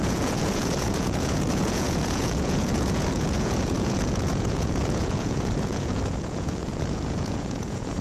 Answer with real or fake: fake